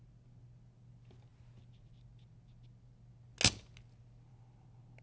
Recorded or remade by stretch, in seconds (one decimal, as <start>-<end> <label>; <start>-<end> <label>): 0.0-5.0 recorded